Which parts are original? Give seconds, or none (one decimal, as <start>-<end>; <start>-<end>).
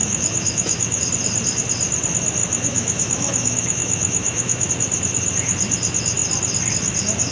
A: 1.0-2.4; 4.7-7.3